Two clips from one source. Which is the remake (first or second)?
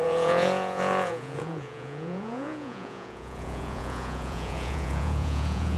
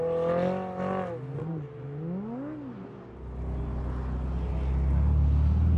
first